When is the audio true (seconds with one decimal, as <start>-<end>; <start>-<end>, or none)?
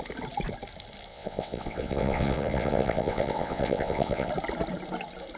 0.0-1.1; 4.3-5.4